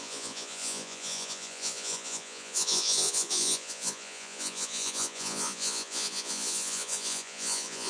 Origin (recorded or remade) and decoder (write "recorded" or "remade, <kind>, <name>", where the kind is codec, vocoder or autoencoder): remade, vocoder, Vocos